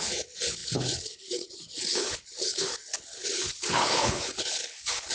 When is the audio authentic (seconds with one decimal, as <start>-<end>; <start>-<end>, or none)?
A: none